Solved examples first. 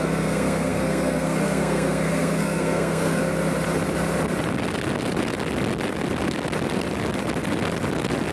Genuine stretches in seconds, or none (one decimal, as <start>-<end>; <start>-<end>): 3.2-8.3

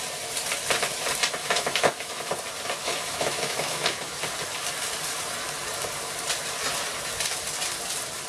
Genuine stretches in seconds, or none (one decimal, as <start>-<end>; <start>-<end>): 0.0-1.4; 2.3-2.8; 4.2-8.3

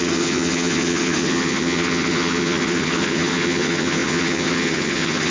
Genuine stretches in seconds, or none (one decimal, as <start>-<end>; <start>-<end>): none

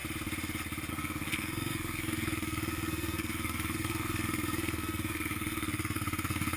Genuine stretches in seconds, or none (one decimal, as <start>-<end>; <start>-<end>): 0.0-0.9

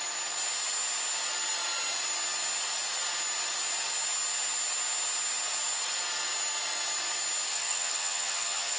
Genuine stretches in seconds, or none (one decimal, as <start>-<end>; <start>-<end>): 0.0-7.5

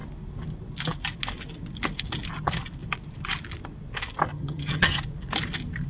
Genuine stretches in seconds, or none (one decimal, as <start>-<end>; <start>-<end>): 0.0-4.3; 5.0-5.9

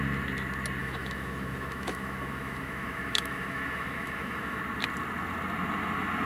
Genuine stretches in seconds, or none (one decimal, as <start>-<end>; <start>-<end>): 0.0-0.8; 4.6-6.3

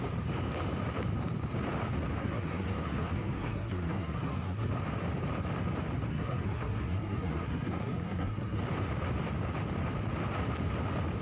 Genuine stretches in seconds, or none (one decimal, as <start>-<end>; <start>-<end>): 0.0-2.2; 4.7-6.1; 8.6-11.2